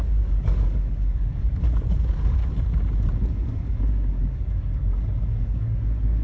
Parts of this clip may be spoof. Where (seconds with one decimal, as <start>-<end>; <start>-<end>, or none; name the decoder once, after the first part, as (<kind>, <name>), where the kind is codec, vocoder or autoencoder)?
0.0-2.4 (codec, DAC); 3.3-6.2